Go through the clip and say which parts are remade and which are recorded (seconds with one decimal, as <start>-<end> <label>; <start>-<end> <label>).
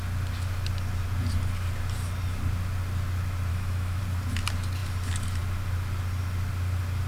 0.0-3.5 recorded; 3.5-4.0 remade; 4.0-7.1 recorded